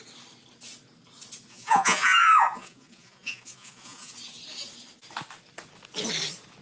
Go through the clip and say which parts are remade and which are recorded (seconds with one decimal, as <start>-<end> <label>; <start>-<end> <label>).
0.0-1.5 recorded; 1.5-4.1 remade; 4.1-6.6 recorded